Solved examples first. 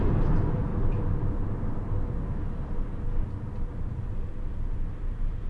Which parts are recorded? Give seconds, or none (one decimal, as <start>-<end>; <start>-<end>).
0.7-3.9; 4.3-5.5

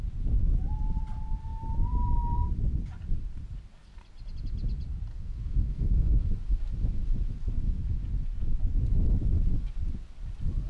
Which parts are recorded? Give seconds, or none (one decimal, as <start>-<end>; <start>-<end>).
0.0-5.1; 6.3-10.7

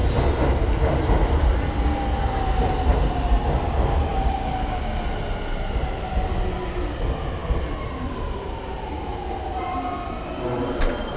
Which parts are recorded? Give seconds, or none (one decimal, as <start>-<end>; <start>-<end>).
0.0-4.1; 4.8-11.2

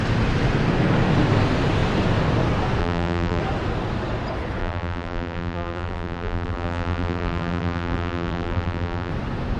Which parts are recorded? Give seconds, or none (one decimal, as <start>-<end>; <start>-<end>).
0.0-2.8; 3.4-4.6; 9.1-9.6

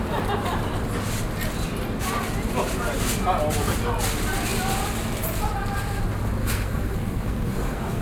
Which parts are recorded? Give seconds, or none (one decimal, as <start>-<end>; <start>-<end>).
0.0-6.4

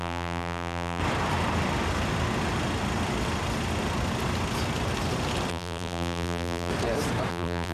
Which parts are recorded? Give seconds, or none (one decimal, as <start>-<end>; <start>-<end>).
1.0-5.5; 6.7-7.3